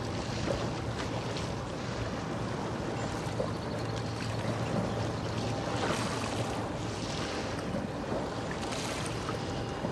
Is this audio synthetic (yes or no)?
no